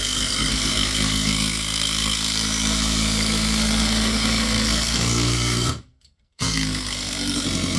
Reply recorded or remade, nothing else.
remade